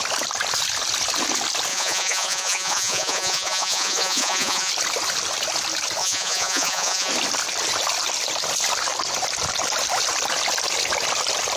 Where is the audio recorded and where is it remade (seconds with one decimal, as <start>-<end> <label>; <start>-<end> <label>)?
0.0-1.7 recorded; 1.7-4.7 remade; 4.7-6.0 recorded; 6.0-7.1 remade; 7.1-11.6 recorded